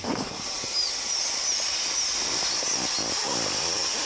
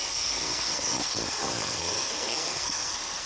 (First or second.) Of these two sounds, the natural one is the first